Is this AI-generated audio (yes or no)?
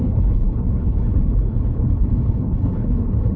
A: yes